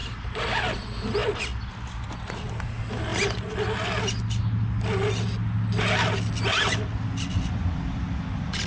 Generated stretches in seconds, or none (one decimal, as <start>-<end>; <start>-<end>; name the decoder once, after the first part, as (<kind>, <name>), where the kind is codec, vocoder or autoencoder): 0.0-0.6 (vocoder, BigVGAN v2)